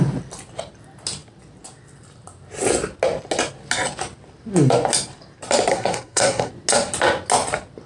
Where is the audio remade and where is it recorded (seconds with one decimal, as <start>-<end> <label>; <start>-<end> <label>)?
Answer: 0.0-5.7 recorded; 5.7-6.5 remade; 6.5-7.9 recorded